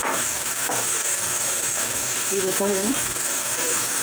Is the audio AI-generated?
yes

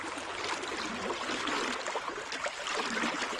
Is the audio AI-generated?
no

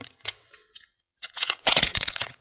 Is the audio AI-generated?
yes